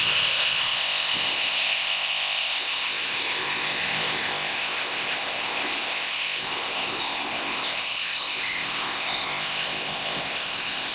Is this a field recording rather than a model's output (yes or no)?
no